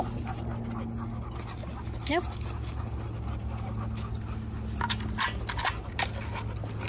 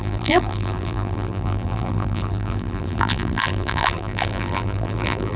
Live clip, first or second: first